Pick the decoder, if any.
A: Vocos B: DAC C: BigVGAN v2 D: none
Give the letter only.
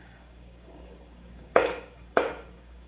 B